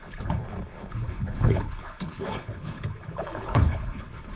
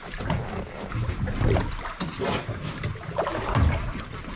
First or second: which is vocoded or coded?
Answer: first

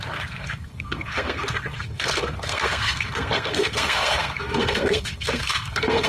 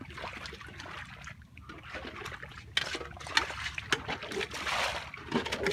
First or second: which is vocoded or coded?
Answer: first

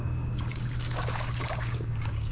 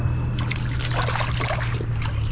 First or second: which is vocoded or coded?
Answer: first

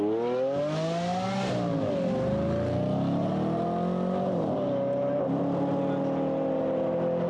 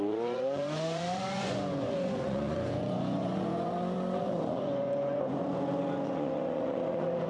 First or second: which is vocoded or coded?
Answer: second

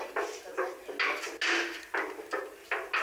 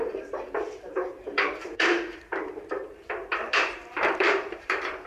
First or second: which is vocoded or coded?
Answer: second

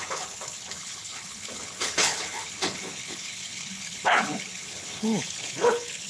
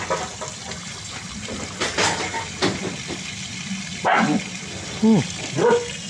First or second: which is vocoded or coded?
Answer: first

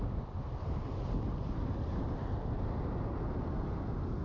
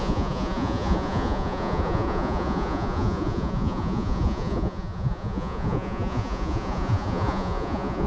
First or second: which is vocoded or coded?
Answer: second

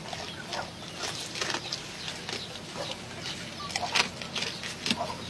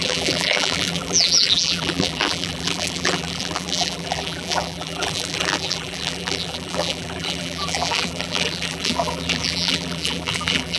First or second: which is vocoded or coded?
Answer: second